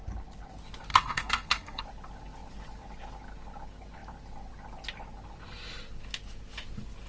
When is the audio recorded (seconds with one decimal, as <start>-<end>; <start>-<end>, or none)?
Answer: 0.0-0.9; 1.8-7.1